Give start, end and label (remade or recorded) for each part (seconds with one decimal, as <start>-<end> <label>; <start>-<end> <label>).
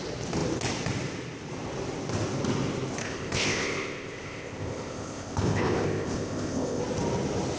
0.0-3.0 recorded; 3.0-6.8 remade; 6.8-7.6 recorded